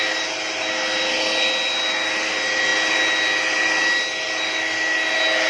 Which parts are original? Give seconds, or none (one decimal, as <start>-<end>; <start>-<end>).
0.0-5.5